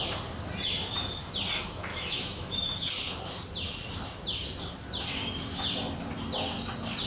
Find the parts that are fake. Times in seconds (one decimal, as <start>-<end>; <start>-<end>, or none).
1.9-2.9